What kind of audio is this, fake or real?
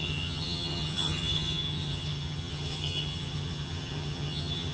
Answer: fake